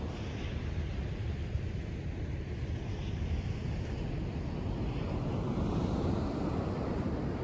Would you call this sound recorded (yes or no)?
yes